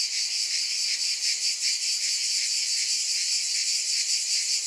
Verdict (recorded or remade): recorded